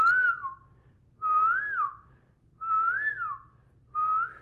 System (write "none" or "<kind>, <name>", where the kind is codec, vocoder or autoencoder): none